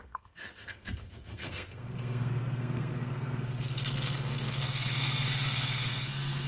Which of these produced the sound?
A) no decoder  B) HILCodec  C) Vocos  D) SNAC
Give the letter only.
D